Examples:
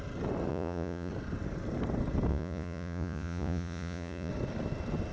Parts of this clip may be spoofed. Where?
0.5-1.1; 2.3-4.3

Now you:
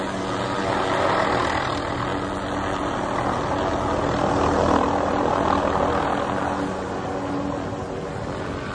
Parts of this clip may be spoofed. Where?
none

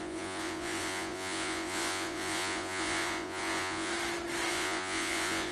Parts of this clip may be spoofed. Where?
0.0-3.9; 4.5-5.5

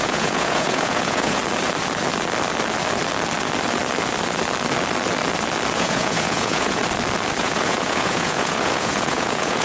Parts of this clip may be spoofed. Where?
0.0-1.4; 5.7-6.8; 7.4-9.6

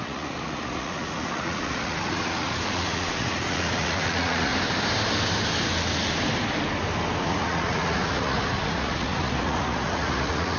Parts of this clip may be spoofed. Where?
0.0-4.5; 7.2-10.6

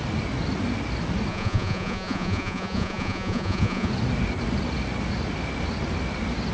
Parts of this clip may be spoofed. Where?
1.3-3.9

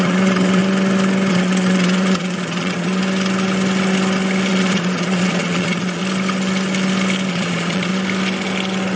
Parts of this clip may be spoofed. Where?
0.0-0.6; 1.3-3.0; 4.5-6.0; 7.3-7.9

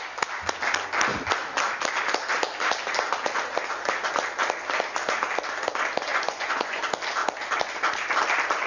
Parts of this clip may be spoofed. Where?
6.1-6.8